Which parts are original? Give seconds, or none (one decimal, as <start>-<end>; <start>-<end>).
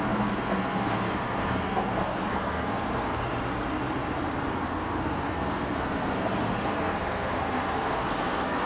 3.2-4.5